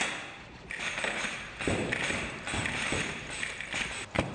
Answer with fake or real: real